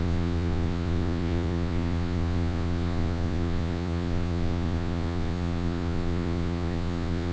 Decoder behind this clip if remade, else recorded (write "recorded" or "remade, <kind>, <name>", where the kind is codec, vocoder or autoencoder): remade, vocoder, Vocos